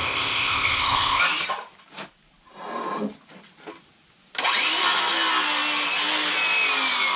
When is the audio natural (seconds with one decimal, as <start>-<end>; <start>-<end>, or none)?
1.2-7.2